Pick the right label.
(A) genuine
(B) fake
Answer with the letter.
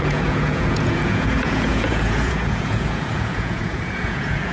B